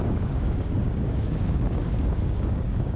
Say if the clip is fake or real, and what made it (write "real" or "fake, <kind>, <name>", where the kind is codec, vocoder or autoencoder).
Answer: fake, codec, DAC